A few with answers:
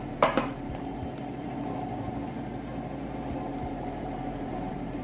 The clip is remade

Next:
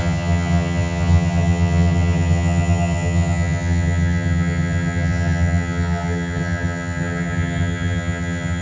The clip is remade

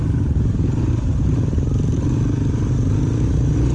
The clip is recorded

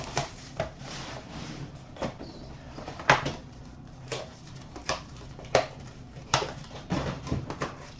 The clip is remade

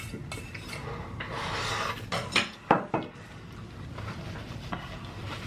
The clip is recorded